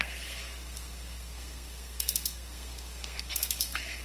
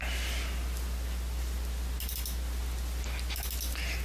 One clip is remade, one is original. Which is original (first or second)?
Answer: second